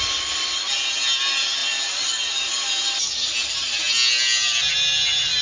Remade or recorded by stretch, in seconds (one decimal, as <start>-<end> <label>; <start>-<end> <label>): 0.0-5.4 recorded